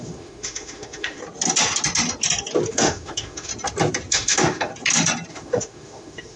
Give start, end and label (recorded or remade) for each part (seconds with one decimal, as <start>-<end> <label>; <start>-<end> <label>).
0.0-1.2 remade; 1.2-2.7 recorded; 2.7-3.5 remade; 3.5-4.1 recorded; 4.1-4.7 remade; 4.7-5.3 recorded; 5.3-6.4 remade